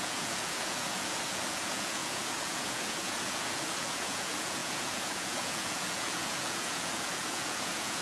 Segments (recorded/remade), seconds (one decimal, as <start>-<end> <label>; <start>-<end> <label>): 0.0-8.0 remade